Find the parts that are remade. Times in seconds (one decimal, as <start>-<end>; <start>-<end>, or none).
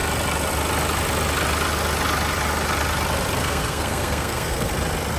3.4-4.7